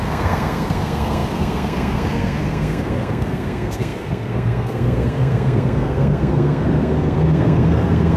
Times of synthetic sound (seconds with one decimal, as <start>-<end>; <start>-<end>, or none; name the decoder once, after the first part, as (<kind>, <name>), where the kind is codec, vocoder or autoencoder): 0.0-8.2 (codec, SNAC)